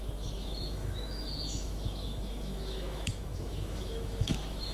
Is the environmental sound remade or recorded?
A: remade